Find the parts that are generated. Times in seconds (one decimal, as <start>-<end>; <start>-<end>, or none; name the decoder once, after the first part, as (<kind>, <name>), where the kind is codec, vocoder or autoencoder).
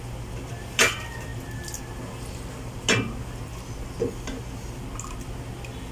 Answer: none